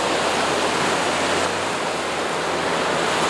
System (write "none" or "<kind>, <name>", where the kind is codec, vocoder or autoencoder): none